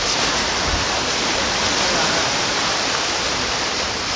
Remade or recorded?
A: recorded